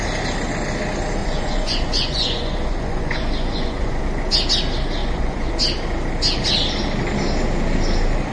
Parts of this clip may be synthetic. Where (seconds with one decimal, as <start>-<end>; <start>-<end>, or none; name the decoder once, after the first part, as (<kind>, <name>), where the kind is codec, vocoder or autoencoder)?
1.2-4.0 (vocoder, Vocos); 5.0-5.5